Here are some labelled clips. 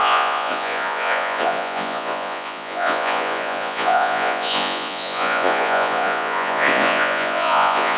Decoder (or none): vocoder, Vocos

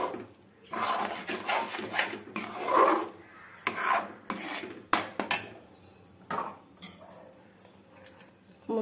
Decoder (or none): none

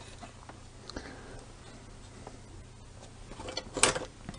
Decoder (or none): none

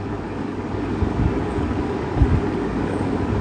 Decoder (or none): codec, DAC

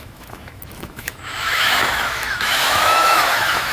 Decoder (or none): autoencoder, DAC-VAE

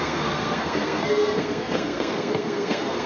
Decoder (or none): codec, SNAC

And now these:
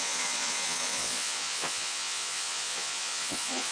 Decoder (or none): vocoder, Vocos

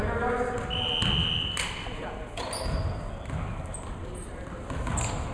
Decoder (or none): none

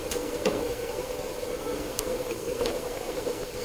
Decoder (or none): codec, SNAC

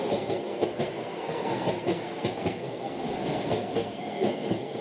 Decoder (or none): codec, SNAC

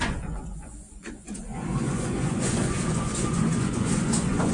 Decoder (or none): vocoder, Vocos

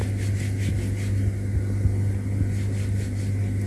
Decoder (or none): none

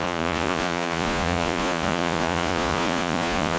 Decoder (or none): vocoder, Vocos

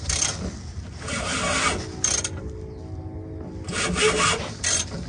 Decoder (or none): none